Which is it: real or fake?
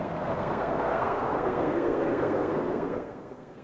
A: fake